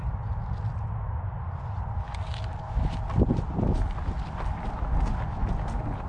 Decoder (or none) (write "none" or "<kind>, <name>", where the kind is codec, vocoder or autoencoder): none